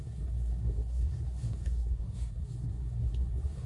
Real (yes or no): no